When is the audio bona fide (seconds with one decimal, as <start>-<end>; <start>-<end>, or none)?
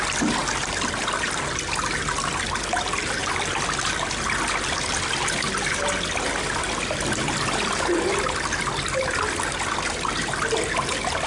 0.0-11.3